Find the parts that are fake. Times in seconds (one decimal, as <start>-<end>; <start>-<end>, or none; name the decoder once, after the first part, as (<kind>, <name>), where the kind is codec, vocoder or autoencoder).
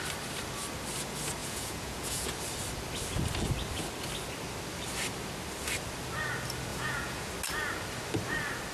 1.4-2.3 (vocoder, Vocos); 6.7-7.3